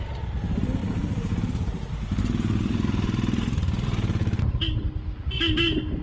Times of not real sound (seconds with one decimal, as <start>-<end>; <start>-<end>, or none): none

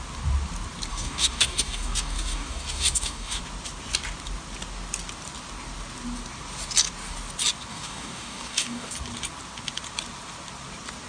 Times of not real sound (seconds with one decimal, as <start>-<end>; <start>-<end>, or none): 0.9-3.4; 7.7-8.9

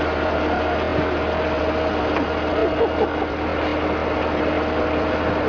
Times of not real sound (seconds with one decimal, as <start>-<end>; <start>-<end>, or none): none

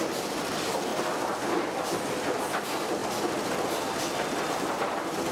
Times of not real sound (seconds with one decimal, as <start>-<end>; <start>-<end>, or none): 0.0-0.9; 2.4-3.0; 4.8-5.3

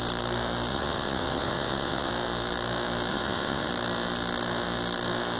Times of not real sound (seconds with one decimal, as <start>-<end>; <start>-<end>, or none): 0.7-2.1; 3.1-3.7

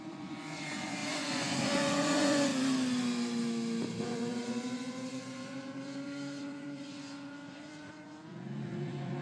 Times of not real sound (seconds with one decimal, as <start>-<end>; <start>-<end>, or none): 0.0-2.5; 4.0-9.2

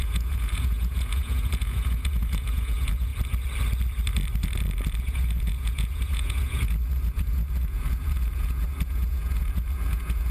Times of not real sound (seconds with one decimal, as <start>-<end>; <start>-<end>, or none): 0.0-3.1; 5.0-10.3